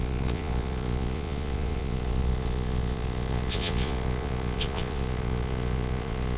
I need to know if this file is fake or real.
fake